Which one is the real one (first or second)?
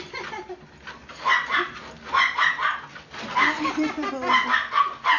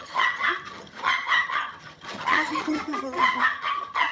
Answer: first